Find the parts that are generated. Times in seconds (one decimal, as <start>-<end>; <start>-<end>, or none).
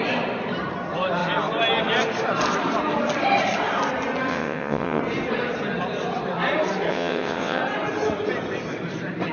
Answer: 4.3-5.0; 6.9-7.6